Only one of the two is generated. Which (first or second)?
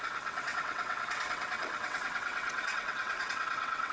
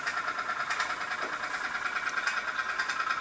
first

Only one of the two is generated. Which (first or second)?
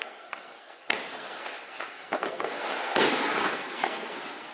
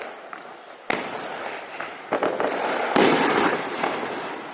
first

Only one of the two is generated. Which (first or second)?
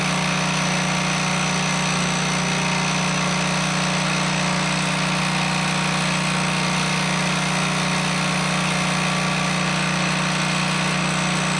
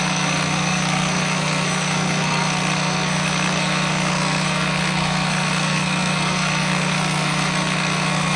second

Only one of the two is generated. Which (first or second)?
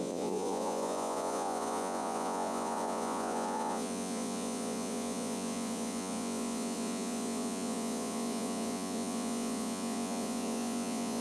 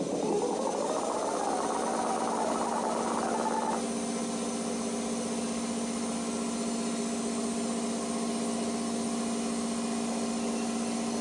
first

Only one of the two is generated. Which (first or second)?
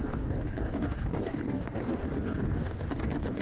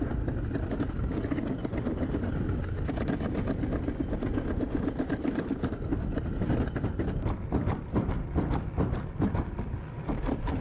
first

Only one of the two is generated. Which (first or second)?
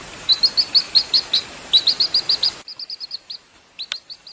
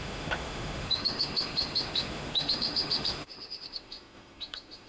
second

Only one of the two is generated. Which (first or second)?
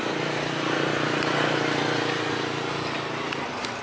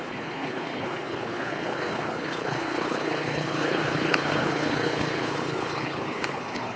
second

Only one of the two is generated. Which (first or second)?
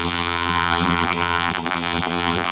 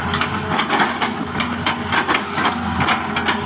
first